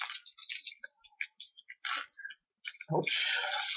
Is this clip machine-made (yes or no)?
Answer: no